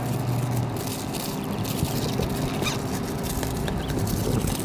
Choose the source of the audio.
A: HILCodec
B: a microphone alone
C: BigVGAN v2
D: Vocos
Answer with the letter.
B